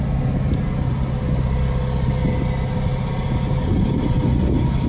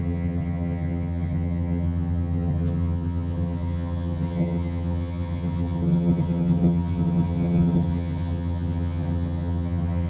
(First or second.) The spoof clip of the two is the second